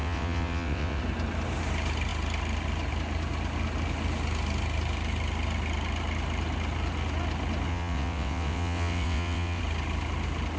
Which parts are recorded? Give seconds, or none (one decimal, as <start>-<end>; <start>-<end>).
1.0-7.7; 9.6-10.6